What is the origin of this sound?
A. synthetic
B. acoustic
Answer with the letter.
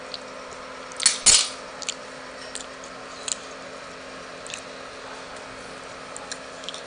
B